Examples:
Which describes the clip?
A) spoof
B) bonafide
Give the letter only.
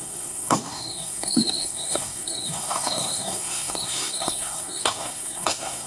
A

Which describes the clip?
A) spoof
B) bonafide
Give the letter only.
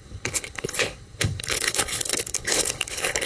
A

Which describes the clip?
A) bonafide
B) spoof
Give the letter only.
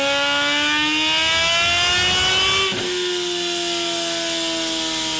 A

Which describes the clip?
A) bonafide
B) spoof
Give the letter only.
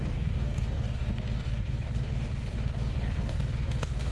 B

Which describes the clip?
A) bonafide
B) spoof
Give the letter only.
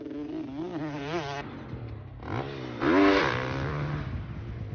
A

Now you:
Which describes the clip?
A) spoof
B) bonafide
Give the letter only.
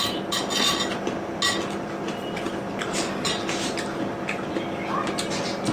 B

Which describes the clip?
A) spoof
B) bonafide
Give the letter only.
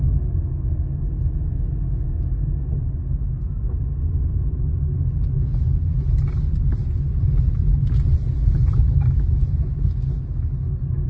B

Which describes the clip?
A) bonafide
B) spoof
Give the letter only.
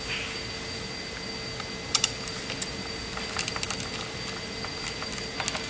A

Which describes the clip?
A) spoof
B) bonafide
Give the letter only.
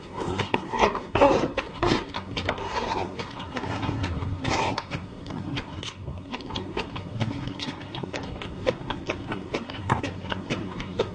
A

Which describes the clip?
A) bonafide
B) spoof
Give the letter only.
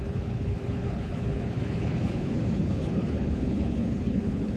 B